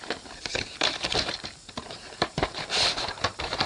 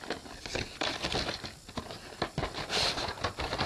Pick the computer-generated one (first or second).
first